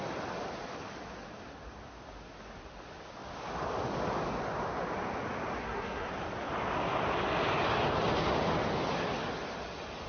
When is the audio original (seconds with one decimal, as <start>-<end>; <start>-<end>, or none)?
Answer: 0.0-5.6; 6.1-10.1